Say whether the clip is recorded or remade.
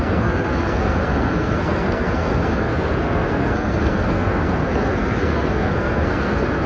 remade